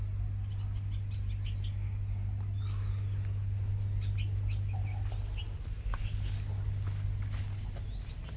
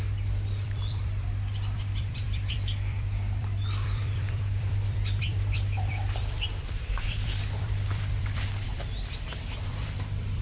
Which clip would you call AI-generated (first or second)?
second